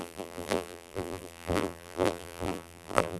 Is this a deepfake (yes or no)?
yes